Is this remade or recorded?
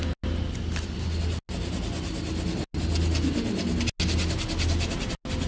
recorded